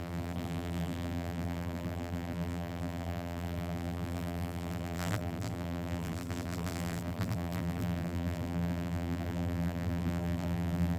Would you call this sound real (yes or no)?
no